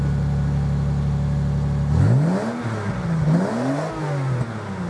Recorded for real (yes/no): yes